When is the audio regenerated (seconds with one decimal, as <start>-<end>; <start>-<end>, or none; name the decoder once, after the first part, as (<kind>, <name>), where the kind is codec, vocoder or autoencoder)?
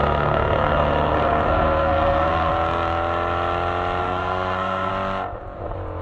0.0-2.5 (codec, SNAC); 4.0-4.9